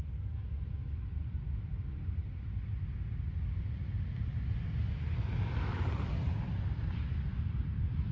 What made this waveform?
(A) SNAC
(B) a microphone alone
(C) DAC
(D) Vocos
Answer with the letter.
B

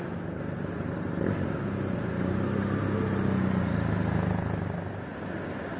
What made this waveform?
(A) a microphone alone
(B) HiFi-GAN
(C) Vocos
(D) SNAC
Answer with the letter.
A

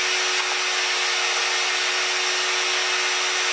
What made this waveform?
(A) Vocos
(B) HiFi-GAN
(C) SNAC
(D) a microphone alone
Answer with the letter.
D